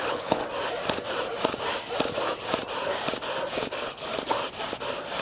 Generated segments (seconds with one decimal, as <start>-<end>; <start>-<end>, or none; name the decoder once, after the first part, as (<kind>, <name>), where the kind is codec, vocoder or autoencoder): 0.0-0.4 (codec, HILCodec); 3.5-4.1